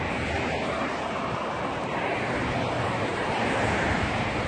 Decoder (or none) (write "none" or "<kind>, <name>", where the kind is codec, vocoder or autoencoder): none